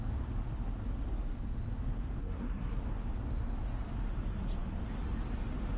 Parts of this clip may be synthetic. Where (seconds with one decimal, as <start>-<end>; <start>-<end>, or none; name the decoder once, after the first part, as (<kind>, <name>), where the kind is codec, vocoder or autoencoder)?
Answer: 2.2-2.8 (codec, SNAC)